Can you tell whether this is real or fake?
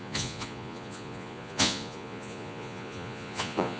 fake